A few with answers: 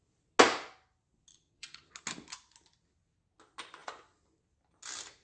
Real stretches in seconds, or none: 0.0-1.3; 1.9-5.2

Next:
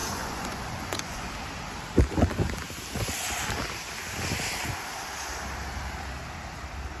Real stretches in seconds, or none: 1.3-7.0

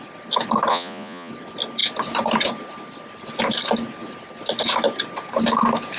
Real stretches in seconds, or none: 0.0-0.7; 1.3-6.0

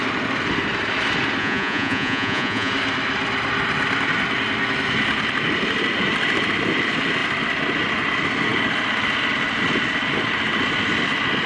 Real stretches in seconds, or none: 0.0-1.4; 2.7-11.5

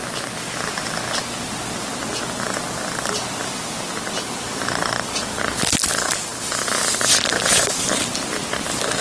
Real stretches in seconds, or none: 0.0-9.0